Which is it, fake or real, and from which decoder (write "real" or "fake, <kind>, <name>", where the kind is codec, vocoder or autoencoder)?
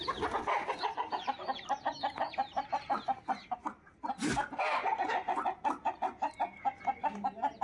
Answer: real